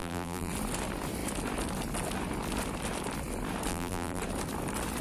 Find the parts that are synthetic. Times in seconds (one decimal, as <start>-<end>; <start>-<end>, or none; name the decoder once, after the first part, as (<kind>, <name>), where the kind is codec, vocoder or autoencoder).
0.0-0.5 (vocoder, BigVGAN v2); 3.7-4.2